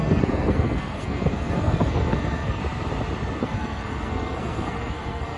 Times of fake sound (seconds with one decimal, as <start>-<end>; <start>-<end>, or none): 0.0-2.6; 3.4-5.4